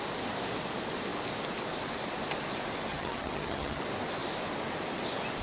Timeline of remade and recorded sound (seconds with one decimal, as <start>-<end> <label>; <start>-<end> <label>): 0.0-2.9 recorded; 2.9-3.8 remade; 3.8-5.4 recorded